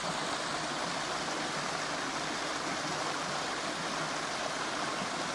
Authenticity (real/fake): real